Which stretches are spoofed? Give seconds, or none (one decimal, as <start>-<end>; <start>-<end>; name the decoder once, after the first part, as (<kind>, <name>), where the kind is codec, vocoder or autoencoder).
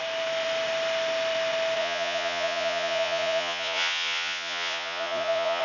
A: 1.8-5.6 (vocoder, Vocos)